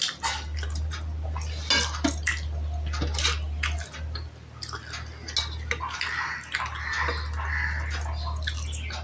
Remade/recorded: recorded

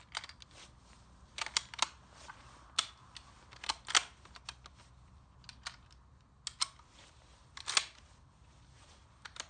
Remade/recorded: recorded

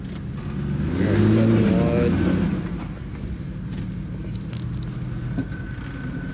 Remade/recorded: recorded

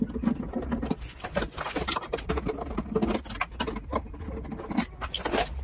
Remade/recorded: recorded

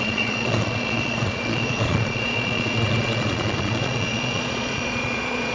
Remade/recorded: remade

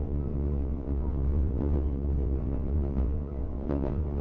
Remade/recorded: remade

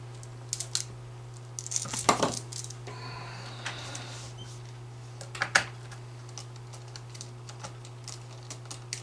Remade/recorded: recorded